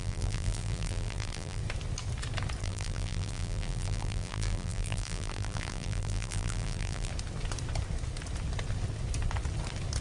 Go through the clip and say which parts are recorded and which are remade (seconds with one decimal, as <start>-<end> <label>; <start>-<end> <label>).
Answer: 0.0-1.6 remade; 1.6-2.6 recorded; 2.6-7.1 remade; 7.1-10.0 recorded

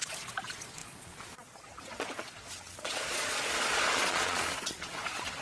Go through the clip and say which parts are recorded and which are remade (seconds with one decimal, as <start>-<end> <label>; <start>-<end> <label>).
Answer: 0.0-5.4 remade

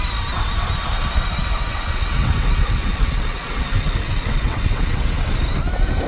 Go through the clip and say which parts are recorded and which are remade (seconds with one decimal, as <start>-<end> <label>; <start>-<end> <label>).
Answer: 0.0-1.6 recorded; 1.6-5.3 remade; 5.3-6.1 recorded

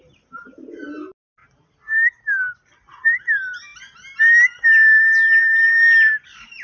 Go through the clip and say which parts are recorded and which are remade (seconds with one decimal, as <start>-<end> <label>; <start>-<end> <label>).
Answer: 0.0-6.6 recorded